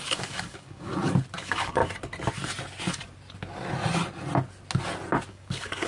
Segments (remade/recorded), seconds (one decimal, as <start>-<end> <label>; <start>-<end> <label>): 0.0-0.9 remade; 0.9-1.4 recorded; 1.4-1.8 remade; 1.8-5.3 recorded; 5.3-5.9 remade